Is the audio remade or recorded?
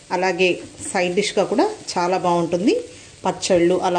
recorded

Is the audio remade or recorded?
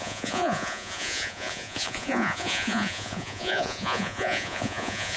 remade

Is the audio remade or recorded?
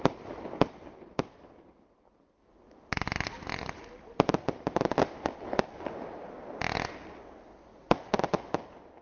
recorded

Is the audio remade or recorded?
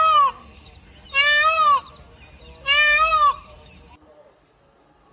recorded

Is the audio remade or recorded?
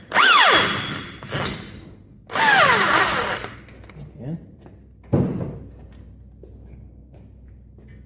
recorded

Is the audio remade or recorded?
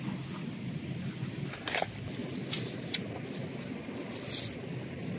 recorded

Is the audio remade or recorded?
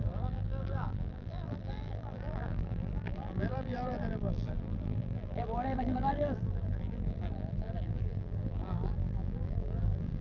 remade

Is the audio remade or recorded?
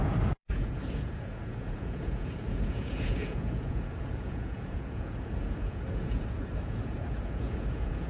remade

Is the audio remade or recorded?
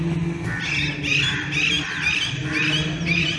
recorded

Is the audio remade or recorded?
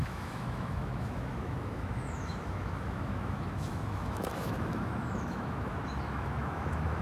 remade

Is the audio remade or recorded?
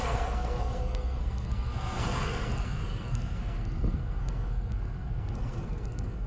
remade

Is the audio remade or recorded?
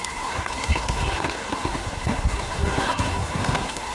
remade